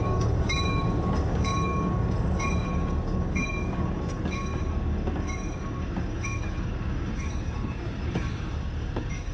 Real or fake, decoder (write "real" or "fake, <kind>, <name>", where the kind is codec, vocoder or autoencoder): fake, codec, DAC